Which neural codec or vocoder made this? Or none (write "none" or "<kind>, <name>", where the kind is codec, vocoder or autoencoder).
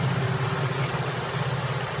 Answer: none